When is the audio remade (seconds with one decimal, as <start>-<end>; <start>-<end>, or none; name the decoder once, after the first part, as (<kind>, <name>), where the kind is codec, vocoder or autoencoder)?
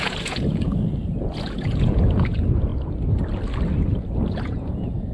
0.0-0.7 (vocoder, Vocos); 1.2-2.7; 4.3-5.1